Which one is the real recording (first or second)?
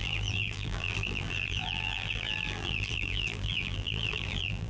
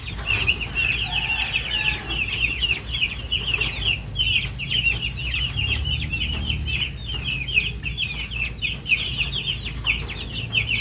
second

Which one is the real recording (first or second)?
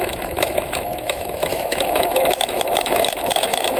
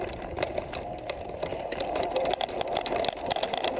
second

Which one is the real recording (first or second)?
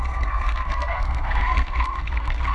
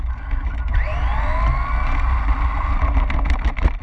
second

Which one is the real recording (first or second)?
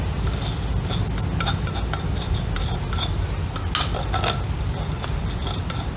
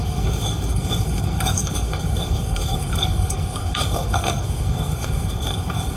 first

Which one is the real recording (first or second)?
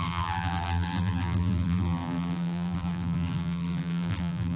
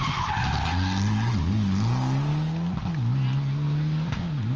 second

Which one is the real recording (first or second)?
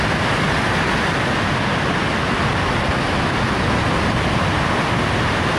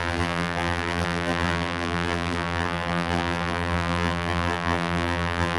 first